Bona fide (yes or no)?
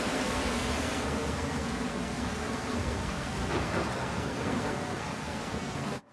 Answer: no